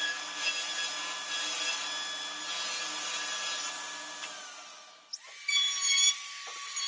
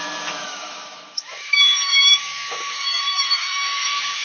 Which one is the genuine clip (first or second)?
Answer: first